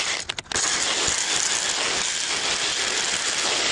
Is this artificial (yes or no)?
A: no